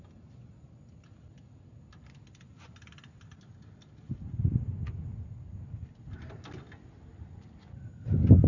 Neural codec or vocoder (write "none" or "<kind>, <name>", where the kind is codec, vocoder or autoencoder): none